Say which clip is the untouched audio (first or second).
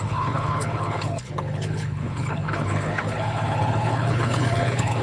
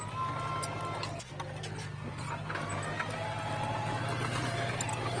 second